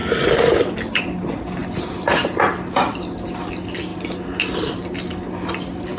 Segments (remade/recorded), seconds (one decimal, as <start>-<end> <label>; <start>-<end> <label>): 0.0-1.6 recorded; 1.6-3.3 remade; 3.3-6.0 recorded